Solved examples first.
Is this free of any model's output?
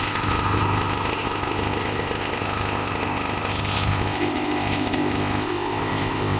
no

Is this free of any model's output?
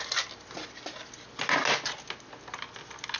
yes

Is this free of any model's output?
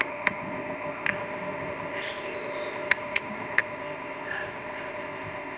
no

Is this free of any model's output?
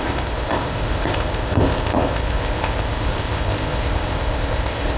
no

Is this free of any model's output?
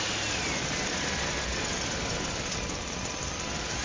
yes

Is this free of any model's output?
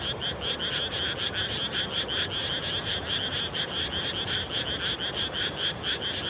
yes